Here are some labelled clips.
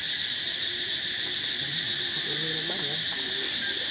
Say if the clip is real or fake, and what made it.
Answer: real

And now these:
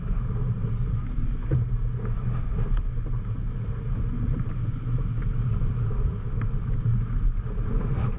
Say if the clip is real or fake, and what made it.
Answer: real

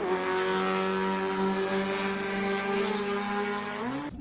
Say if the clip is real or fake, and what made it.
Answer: real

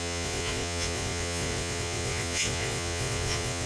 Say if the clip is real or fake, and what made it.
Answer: fake, vocoder, Vocos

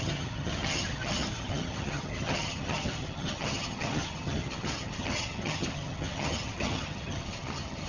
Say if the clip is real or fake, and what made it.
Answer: fake, vocoder, HiFi-GAN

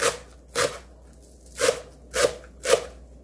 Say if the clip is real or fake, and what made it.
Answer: real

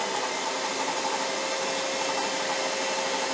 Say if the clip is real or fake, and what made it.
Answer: real